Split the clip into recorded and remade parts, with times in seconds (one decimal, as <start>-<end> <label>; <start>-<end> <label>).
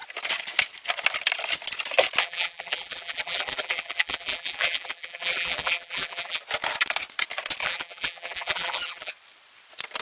0.0-2.2 recorded; 2.2-6.4 remade; 6.4-7.6 recorded; 7.6-9.1 remade; 9.1-10.0 recorded